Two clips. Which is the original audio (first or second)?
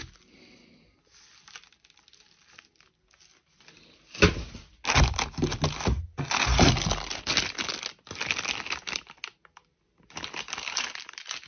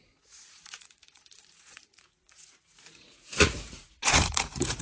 first